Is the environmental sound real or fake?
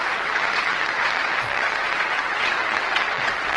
fake